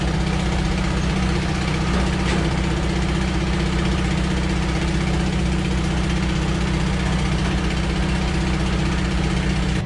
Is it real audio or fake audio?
real